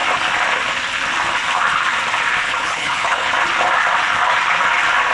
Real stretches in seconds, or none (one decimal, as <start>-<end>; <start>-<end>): 0.0-2.4; 3.3-5.1

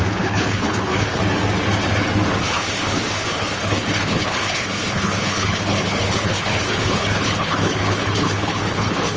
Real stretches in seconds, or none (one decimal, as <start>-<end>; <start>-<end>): 1.2-2.4

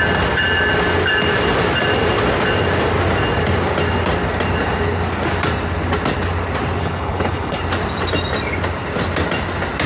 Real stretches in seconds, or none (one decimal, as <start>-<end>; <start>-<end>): 0.0-6.8; 7.6-9.9

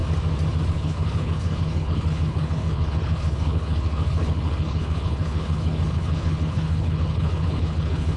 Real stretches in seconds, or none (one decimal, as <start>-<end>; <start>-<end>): 0.0-0.7

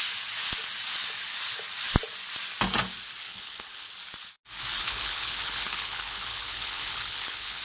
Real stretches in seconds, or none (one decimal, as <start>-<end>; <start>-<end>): 0.0-3.2; 3.9-4.8